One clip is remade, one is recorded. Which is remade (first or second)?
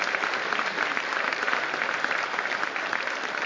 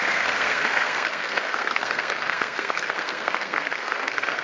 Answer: second